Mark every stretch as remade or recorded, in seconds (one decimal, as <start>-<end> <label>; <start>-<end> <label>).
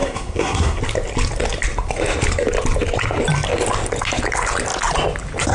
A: 0.0-0.8 remade; 0.8-5.5 recorded